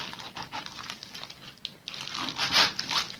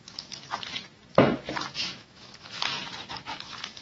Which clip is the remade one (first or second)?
second